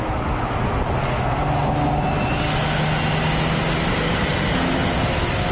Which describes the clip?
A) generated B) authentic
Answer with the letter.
B